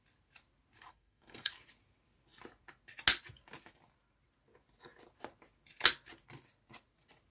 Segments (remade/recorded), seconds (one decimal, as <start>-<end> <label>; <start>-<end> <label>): 0.0-0.9 recorded; 0.9-1.5 remade; 1.5-7.3 recorded